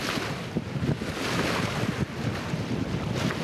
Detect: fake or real real